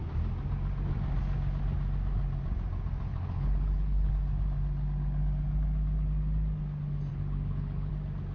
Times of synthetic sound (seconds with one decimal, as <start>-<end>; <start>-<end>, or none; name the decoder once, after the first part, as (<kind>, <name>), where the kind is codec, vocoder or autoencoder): 3.1-4.1 (codec, HILCodec); 7.1-7.9